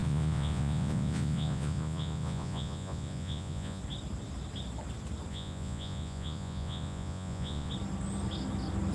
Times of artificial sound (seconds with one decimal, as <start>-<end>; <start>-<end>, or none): 0.0-3.8; 5.3-7.7